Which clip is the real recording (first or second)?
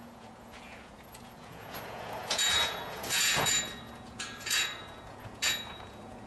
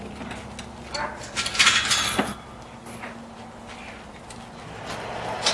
second